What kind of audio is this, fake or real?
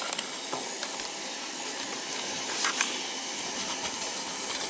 real